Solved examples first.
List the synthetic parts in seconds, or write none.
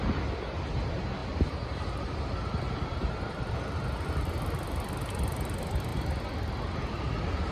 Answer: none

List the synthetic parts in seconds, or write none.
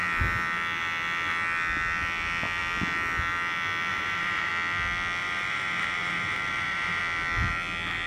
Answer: 3.9-4.5; 5.2-7.0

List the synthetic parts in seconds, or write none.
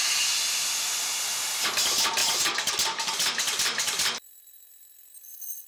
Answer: 2.2-5.7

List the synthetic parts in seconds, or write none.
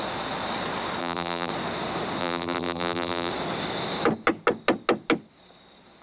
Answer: 1.0-1.5; 2.2-3.3